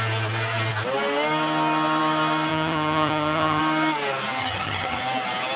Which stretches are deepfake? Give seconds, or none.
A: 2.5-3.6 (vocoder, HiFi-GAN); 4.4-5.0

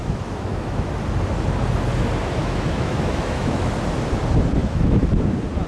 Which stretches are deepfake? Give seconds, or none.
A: 0.0-0.9 (autoencoder, DAC-VAE); 2.4-3.7; 4.6-5.1

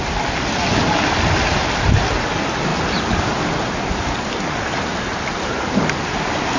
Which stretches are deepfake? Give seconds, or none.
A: none

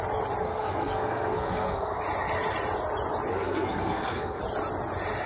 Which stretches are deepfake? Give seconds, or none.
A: 0.4-2.0 (codec, SNAC); 3.3-4.4

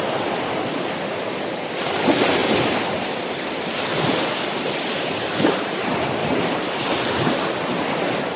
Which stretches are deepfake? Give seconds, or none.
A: 2.4-5.5 (vocoder, BigVGAN v2); 6.2-6.9

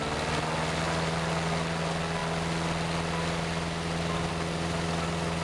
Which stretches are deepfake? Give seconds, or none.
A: none

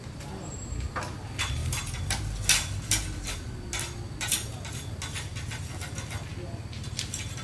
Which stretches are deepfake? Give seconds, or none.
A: none

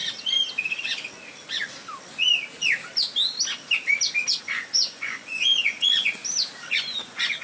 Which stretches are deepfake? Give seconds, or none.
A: 4.4-6.2 (vocoder, Vocos); 6.7-7.4